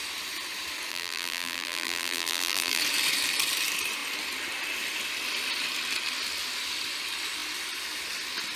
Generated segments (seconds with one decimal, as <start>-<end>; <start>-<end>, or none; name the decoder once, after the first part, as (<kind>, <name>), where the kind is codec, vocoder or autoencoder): 0.9-2.8 (vocoder, BigVGAN v2)